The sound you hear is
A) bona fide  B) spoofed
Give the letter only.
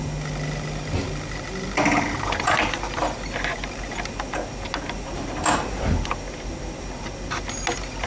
A